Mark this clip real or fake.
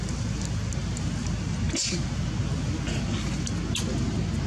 real